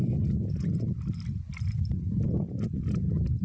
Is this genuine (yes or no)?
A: yes